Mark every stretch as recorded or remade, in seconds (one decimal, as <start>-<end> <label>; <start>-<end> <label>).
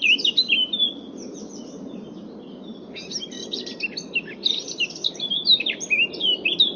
0.0-6.8 recorded